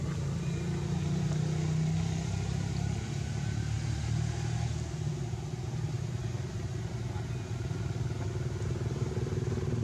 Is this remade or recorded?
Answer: recorded